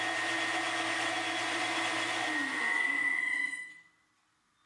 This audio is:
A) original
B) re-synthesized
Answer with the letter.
A